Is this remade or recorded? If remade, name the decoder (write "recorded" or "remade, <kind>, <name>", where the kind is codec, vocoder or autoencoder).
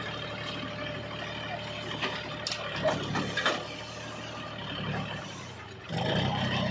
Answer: recorded